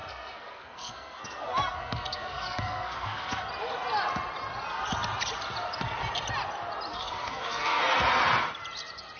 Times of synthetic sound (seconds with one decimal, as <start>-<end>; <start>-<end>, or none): 0.0-3.5; 6.9-7.8